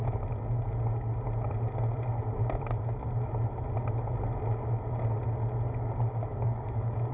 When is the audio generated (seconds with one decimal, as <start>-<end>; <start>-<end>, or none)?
6.3-7.1